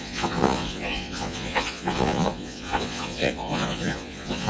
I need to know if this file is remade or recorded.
remade